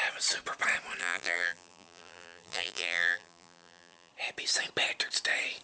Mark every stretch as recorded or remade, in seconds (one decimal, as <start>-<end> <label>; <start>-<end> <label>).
0.0-1.0 recorded; 1.0-4.1 remade; 4.1-5.6 recorded